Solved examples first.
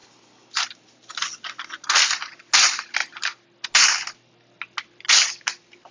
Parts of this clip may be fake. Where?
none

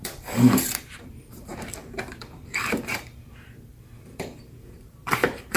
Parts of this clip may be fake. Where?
0.0-5.6